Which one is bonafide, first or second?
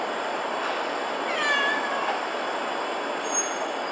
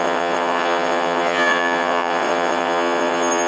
first